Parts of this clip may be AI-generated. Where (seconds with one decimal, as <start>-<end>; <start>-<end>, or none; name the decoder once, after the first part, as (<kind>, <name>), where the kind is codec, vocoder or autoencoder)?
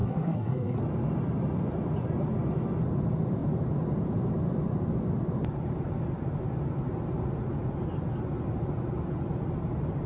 0.0-0.8 (codec, SNAC)